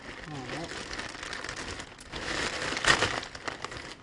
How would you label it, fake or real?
real